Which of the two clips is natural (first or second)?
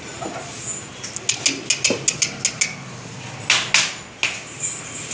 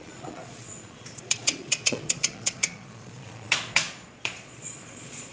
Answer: first